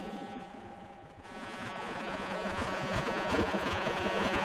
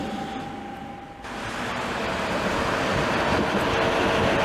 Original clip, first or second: second